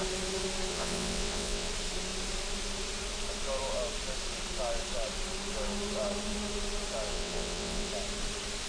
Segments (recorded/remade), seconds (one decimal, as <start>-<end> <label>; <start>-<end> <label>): 0.0-0.7 recorded; 0.7-1.7 remade; 1.7-7.1 recorded; 7.1-7.9 remade; 7.9-8.7 recorded